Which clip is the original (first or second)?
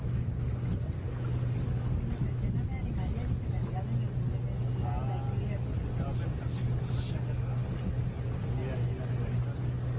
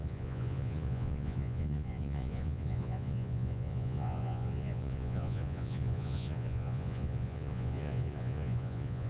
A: first